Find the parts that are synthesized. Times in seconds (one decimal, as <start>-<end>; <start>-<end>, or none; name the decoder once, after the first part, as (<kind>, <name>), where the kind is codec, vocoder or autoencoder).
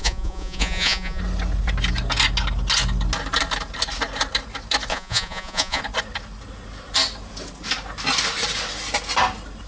0.0-1.2 (vocoder, Vocos); 4.9-5.8